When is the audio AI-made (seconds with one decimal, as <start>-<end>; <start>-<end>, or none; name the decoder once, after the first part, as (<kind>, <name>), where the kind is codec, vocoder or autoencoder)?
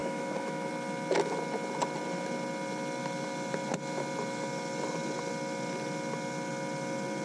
0.0-0.7 (autoencoder, DAC-VAE)